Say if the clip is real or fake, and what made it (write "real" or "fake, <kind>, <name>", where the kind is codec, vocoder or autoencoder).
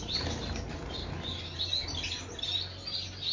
real